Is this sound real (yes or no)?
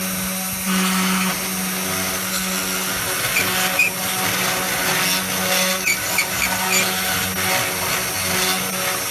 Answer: yes